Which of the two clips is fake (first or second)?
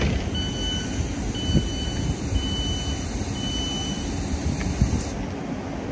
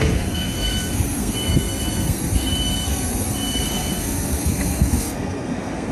second